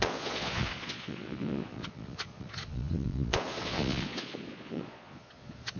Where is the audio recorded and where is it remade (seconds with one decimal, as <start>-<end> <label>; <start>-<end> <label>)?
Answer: 0.0-5.8 remade